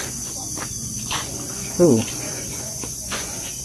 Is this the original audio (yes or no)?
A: no